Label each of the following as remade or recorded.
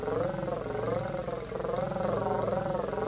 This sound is recorded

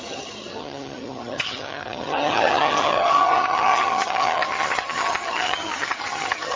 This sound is remade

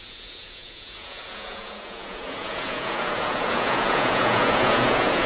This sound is remade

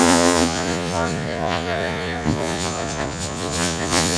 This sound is remade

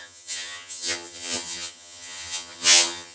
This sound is remade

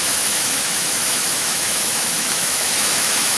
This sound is remade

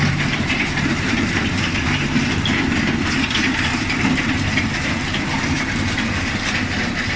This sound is remade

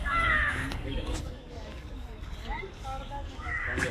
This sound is remade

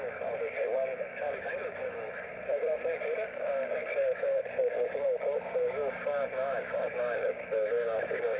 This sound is remade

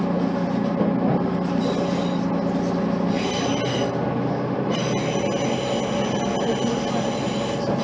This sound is recorded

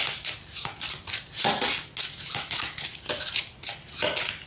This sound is recorded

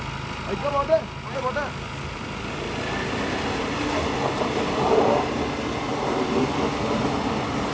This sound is recorded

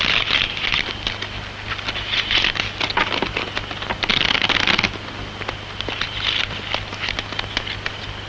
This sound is recorded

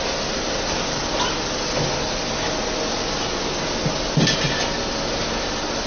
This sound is recorded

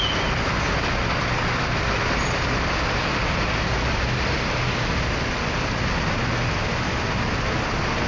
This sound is recorded